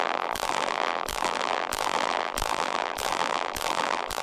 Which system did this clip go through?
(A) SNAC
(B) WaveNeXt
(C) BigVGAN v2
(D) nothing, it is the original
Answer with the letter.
C